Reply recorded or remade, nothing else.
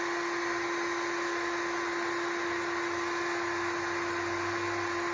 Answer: recorded